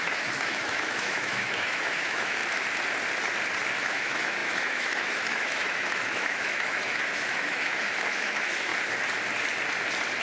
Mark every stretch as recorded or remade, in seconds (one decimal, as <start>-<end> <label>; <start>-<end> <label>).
0.0-2.4 remade; 2.4-3.8 recorded; 3.8-8.7 remade; 8.7-10.2 recorded